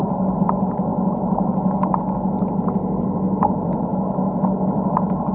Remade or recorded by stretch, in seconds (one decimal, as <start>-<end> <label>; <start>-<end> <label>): 0.0-5.3 recorded